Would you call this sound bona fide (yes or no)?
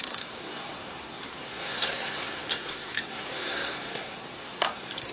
no